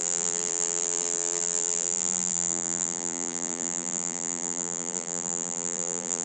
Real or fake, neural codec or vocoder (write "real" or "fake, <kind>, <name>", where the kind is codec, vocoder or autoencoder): fake, vocoder, BigVGAN v2